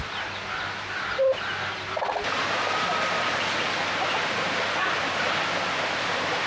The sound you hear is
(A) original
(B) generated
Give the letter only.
A